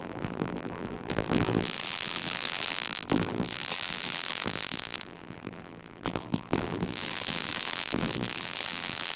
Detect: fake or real fake